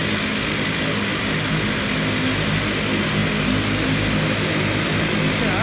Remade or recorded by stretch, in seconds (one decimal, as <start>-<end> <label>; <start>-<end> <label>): 0.0-5.6 recorded